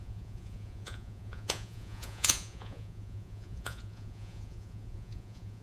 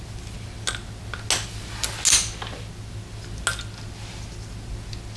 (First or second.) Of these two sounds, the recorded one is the second